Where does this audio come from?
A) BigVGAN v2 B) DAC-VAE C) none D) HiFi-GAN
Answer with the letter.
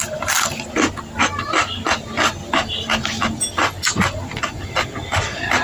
C